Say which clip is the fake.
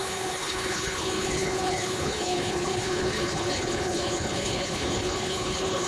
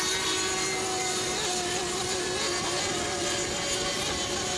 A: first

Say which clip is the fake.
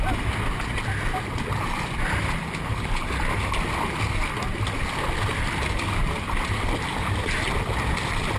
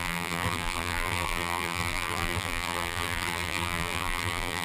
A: second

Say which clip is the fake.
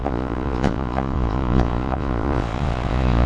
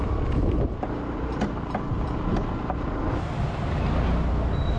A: first